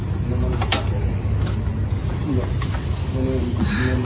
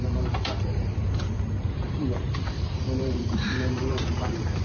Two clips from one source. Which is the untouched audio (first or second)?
first